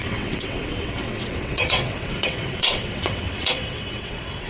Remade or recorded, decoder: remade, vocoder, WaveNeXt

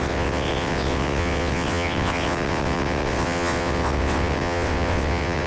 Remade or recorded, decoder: remade, vocoder, WaveNeXt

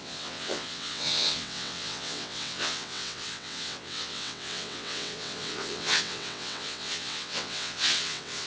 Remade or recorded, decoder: remade, vocoder, WaveNeXt